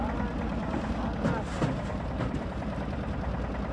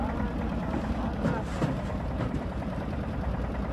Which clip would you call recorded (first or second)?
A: first